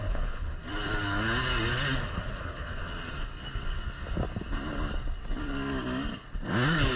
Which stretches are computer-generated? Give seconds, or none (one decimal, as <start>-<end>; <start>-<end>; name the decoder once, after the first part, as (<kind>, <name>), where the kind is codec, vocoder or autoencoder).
0.0-0.6 (codec, HILCodec); 2.4-2.8